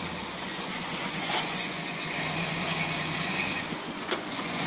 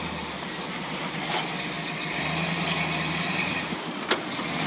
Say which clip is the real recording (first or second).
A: second